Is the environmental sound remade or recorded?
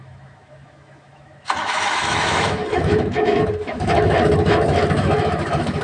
remade